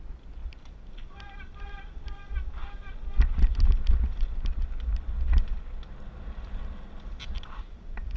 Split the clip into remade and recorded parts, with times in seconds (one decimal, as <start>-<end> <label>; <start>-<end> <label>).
0.0-0.4 recorded; 0.4-1.9 remade; 1.9-8.2 recorded